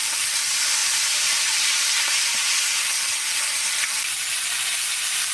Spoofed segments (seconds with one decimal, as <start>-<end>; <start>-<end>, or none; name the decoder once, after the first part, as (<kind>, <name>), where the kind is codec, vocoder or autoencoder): 0.0-5.3 (vocoder, BigVGAN v2)